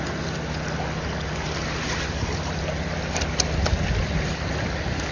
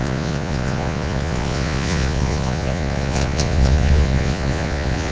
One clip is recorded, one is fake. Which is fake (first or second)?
second